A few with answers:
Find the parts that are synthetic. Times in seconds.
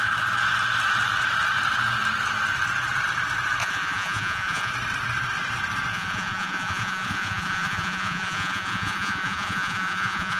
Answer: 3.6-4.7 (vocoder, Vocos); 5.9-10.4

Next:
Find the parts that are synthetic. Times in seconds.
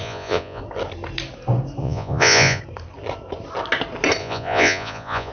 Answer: 0.0-0.6 (vocoder, Vocos); 1.8-2.6; 4.2-5.3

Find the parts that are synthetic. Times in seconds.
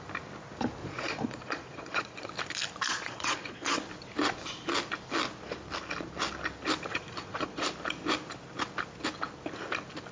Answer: 0.8-2.3 (vocoder, Vocos); 2.9-3.8; 6.9-7.6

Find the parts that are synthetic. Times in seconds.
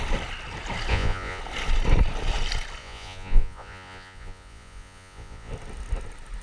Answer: 0.9-1.4 (vocoder, Vocos); 2.8-5.5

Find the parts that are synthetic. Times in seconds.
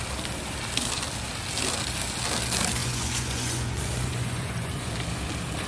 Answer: 2.8-4.9 (vocoder, Vocos)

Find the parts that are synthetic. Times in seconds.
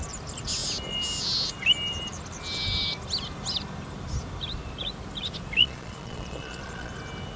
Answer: 5.6-6.9 (vocoder, Vocos)